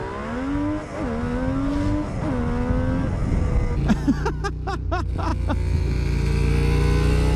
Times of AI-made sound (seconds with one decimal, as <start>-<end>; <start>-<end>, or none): none